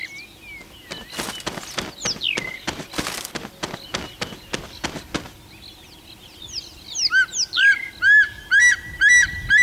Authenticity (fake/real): real